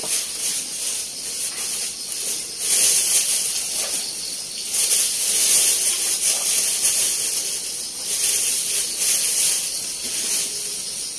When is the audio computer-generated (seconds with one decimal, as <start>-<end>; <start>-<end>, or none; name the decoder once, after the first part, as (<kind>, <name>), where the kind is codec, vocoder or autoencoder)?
none

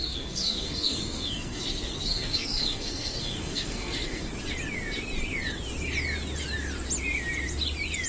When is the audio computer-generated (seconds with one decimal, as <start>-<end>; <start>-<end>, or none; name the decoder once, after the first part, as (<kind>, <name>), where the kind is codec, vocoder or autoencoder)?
0.0-4.3 (codec, SNAC)